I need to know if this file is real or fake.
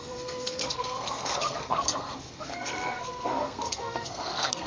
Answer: fake